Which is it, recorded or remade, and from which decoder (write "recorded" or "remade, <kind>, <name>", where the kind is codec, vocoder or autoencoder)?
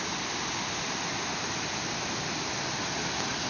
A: recorded